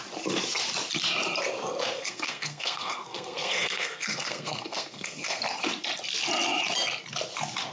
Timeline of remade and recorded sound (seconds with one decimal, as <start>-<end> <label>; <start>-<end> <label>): 0.0-2.0 recorded; 2.0-5.4 remade; 5.4-7.7 recorded